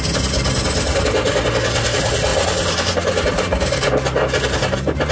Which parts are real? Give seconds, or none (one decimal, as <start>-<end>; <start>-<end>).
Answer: 0.0-2.3

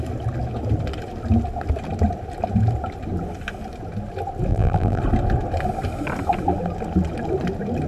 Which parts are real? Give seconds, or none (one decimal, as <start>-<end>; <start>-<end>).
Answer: 0.0-4.5; 5.0-7.9

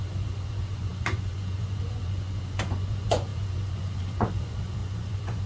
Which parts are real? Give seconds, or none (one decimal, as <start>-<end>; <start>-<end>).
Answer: none

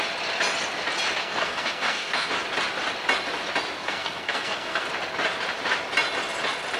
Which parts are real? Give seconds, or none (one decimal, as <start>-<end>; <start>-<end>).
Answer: 0.0-1.2; 2.3-3.8; 4.9-6.8

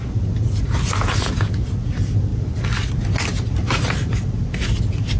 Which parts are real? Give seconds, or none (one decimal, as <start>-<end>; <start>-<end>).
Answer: 0.0-5.2

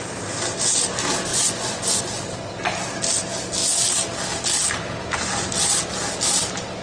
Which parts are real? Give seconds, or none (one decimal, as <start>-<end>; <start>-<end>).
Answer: 0.0-1.3; 2.2-6.8

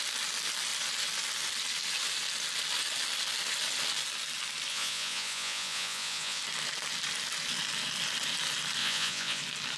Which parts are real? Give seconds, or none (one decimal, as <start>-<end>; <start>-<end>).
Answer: 0.0-4.7; 6.4-8.8; 9.4-9.8